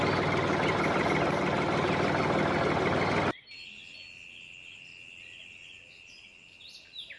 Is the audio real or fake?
real